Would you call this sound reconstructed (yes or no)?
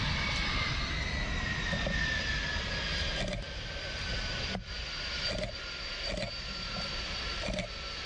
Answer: no